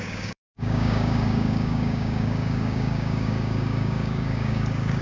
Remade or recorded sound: remade